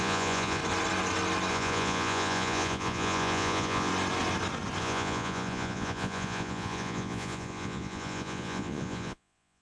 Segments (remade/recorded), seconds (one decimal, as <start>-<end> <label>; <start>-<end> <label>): 0.0-0.6 remade; 0.6-1.5 recorded; 1.5-3.9 remade; 3.9-4.8 recorded; 4.8-9.6 remade